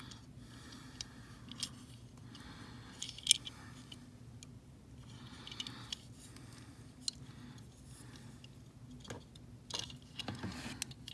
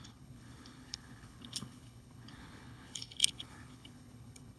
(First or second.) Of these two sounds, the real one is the first